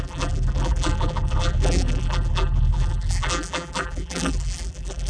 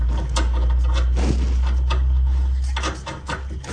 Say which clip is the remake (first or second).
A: first